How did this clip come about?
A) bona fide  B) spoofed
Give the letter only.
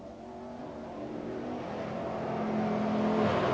A